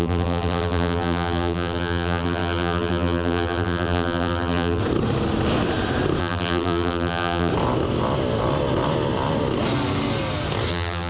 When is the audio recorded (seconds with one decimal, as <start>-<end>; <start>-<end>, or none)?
4.8-6.2; 7.5-10.7